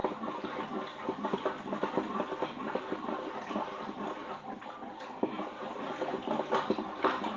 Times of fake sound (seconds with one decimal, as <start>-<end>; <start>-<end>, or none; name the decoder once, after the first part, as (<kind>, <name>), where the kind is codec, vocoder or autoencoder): none